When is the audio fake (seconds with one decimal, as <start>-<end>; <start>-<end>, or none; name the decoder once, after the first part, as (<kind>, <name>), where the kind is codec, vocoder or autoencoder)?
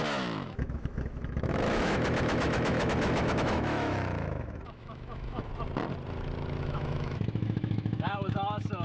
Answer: 0.0-5.5 (autoencoder, DAC-VAE); 6.6-8.8